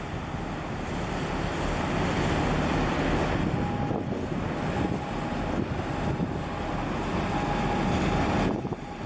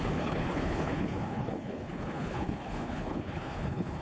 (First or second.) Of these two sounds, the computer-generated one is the second